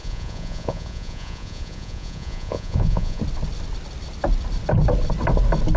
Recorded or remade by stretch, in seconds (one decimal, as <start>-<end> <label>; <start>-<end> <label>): 0.0-3.2 remade; 3.2-5.8 recorded